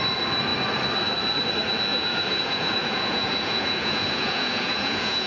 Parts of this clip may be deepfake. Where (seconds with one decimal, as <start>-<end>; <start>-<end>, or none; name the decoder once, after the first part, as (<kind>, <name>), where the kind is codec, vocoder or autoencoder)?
1.9-5.3 (vocoder, Vocos)